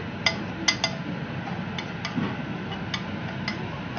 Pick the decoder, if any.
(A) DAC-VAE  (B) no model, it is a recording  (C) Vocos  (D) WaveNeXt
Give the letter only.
B